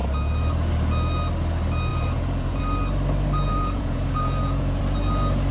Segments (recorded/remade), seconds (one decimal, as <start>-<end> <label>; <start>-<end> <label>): 0.0-1.9 recorded; 1.9-2.6 remade; 2.6-3.5 recorded; 3.5-4.8 remade; 4.8-5.5 recorded